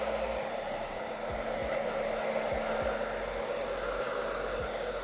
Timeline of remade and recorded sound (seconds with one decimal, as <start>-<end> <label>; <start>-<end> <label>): 0.0-1.6 remade; 1.6-4.6 recorded; 4.6-5.0 remade